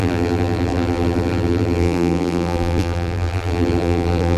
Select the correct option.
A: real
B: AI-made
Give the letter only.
B